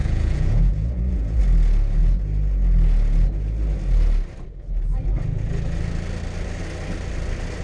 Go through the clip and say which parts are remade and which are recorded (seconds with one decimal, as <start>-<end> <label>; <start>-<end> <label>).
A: 0.0-1.4 remade; 1.4-7.6 recorded